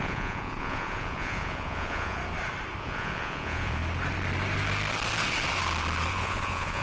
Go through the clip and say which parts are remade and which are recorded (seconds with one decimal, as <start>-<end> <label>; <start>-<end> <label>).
0.0-2.2 remade; 2.2-2.8 recorded; 2.8-3.8 remade; 3.8-6.1 recorded; 6.1-6.8 remade